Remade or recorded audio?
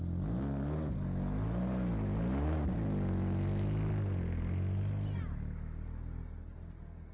recorded